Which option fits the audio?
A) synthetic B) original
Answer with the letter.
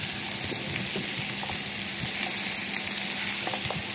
B